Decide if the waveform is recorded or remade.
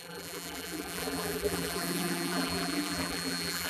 remade